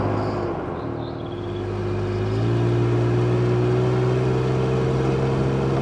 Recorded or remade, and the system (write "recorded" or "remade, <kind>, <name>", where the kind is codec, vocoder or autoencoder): recorded